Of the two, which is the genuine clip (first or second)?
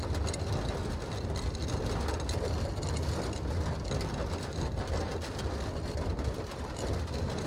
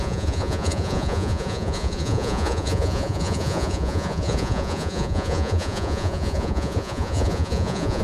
first